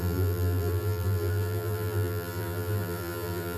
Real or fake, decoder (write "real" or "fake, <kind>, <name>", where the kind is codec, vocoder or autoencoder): fake, vocoder, BigVGAN v2